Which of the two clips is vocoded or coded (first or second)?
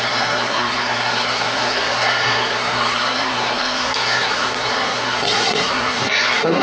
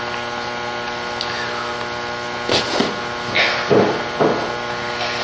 first